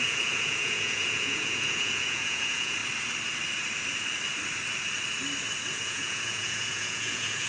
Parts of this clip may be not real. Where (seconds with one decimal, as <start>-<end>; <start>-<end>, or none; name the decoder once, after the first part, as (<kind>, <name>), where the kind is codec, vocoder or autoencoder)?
0.0-2.8 (vocoder, Vocos); 5.7-7.5